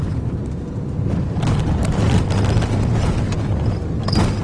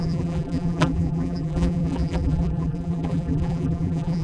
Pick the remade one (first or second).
second